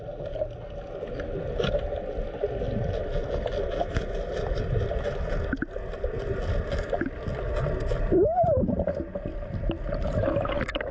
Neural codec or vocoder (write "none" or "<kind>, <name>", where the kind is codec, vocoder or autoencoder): none